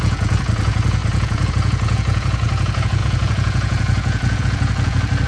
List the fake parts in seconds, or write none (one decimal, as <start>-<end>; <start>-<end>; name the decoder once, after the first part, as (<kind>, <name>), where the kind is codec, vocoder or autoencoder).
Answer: 0.0-5.3 (vocoder, Vocos)